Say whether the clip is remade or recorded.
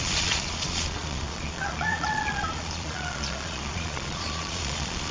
remade